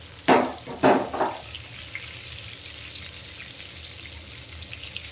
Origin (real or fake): real